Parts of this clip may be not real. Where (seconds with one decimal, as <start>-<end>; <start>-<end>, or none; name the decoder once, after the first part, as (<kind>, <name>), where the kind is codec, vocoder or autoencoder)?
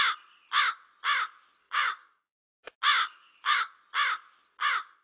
1.6-2.6 (codec, DAC); 3.0-3.7